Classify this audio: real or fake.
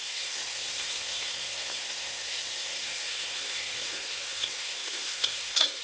fake